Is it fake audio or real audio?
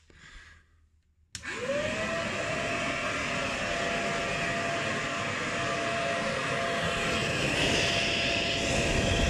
real